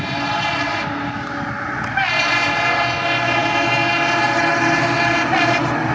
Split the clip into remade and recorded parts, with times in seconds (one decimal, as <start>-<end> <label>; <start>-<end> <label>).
0.0-5.9 recorded